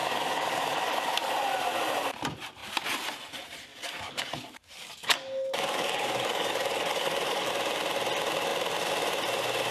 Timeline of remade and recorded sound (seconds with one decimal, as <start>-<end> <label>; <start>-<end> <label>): 0.0-1.3 remade; 1.3-3.7 recorded; 3.7-7.5 remade; 7.5-9.7 recorded